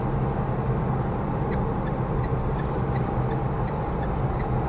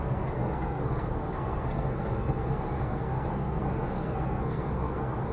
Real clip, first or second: first